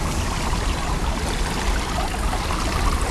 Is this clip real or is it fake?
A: real